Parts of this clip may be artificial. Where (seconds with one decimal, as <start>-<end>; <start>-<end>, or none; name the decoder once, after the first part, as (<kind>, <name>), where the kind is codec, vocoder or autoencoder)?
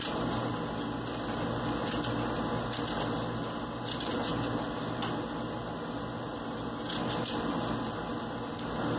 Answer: none